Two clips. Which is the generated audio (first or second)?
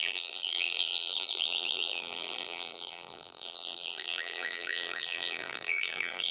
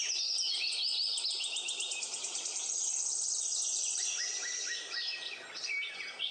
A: first